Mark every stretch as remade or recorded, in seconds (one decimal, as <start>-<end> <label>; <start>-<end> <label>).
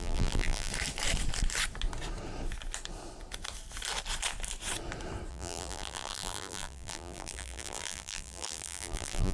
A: 0.0-0.7 remade; 0.7-5.3 recorded; 5.3-9.3 remade